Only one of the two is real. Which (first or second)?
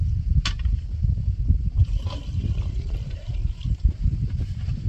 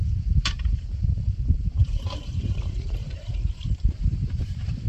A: first